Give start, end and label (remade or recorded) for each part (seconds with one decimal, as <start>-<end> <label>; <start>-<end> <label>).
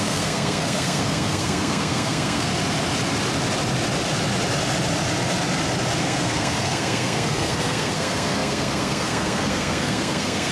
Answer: 0.0-2.5 remade; 2.5-6.0 recorded; 6.0-10.5 remade